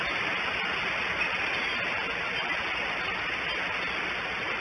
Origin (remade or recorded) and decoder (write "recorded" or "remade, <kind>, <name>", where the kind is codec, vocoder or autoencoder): recorded